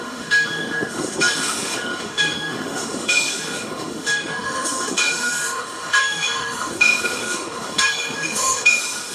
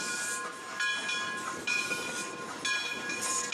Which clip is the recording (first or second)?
second